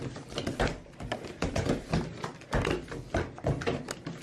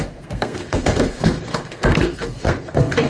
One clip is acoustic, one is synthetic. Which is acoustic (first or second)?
first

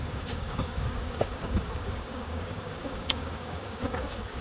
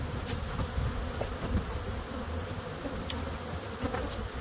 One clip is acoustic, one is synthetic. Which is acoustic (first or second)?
second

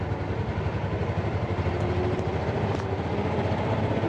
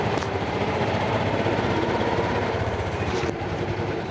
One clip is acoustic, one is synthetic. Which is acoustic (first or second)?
first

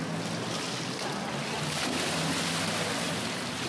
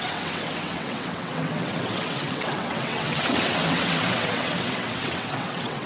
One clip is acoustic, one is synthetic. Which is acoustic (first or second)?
first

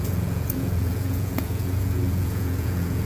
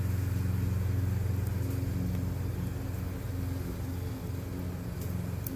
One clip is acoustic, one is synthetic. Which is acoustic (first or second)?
second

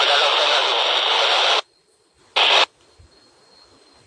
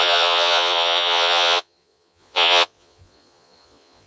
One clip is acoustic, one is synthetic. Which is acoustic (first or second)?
first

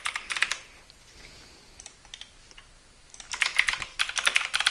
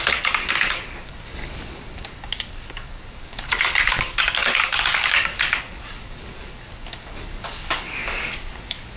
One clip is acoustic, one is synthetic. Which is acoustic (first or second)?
first